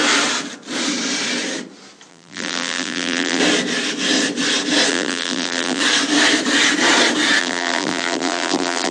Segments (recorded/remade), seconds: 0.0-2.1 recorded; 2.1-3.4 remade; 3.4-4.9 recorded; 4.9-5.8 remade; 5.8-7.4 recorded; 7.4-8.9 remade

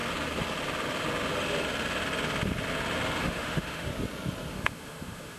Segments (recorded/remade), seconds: 0.0-3.2 recorded; 3.2-3.9 remade; 3.9-4.5 recorded; 4.5-5.4 remade